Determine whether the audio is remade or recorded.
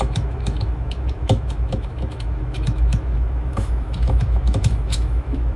remade